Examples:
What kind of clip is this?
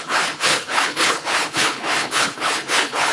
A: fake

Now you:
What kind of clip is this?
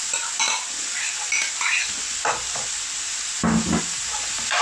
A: real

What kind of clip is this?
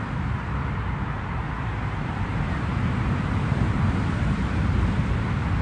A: fake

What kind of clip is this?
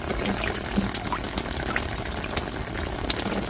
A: real